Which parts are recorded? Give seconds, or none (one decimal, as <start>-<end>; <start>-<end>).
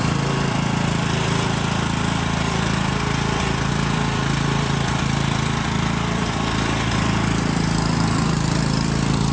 2.9-3.7